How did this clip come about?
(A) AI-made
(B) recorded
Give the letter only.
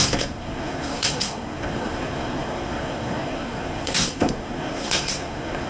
A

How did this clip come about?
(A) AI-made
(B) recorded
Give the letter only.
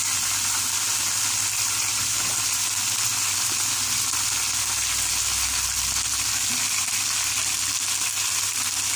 B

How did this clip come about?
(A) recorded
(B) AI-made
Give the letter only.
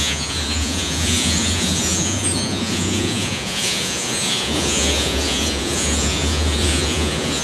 B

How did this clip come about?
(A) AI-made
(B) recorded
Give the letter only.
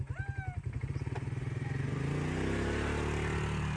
B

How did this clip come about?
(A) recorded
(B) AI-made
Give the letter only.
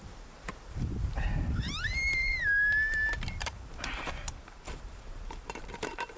B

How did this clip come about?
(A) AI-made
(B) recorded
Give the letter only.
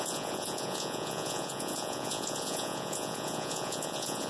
A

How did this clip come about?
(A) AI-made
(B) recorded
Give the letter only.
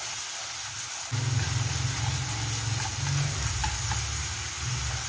B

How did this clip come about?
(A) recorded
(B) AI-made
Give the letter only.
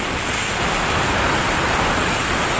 A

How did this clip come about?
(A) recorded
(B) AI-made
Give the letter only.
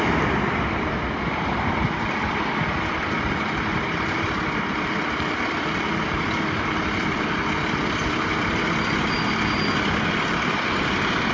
B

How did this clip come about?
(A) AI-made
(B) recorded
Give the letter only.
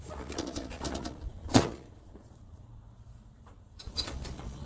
A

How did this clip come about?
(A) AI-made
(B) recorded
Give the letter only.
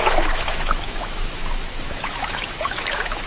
A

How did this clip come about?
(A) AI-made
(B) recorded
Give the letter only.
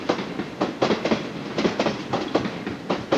B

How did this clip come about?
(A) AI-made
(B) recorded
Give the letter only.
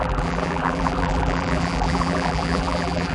A